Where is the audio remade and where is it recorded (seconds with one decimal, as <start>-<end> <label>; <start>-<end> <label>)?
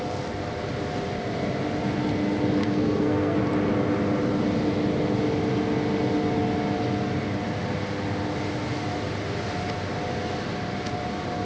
0.0-2.6 recorded; 2.6-3.4 remade; 3.4-11.4 recorded